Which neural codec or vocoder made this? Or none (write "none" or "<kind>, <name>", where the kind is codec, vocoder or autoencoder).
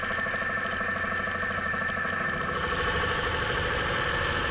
none